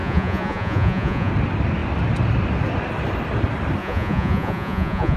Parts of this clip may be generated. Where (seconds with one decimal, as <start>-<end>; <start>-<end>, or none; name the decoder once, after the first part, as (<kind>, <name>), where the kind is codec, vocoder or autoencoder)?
0.0-1.3 (vocoder, Vocos); 3.8-5.2